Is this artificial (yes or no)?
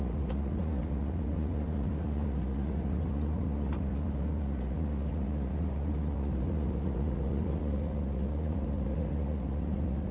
yes